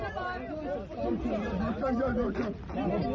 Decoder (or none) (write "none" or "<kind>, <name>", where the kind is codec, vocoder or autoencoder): none